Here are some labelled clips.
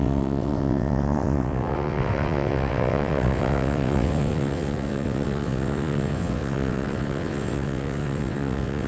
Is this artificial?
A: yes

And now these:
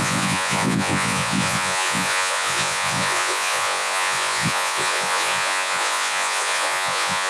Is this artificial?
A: yes